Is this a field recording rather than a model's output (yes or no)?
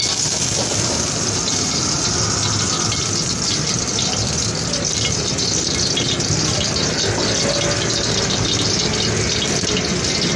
yes